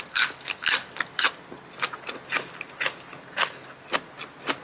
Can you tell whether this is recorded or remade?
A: recorded